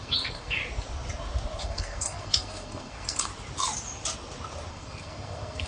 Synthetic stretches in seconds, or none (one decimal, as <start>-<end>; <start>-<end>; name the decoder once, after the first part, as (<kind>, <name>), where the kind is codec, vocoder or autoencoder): 0.0-0.6 (codec, SNAC); 1.6-3.3; 4.7-5.7